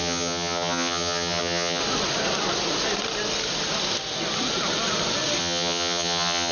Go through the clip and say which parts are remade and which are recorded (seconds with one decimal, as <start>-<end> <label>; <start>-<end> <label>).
0.0-1.8 remade; 1.8-5.4 recorded; 5.4-6.5 remade